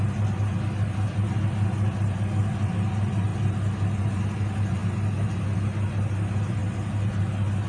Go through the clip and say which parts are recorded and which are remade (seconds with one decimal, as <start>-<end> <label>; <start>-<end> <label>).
0.0-7.7 recorded